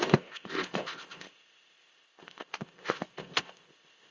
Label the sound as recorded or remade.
remade